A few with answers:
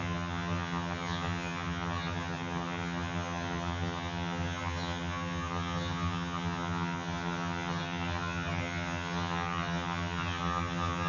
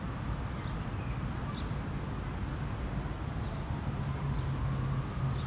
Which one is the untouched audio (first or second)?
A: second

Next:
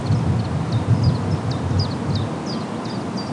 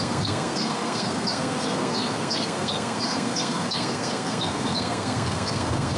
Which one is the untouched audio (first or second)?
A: first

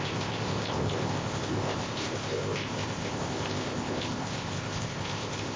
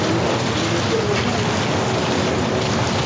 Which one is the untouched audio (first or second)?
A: second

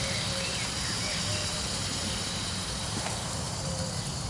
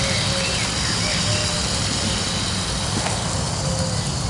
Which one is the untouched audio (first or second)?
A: second